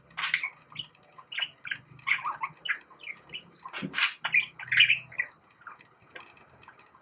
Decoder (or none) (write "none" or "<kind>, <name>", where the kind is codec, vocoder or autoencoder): none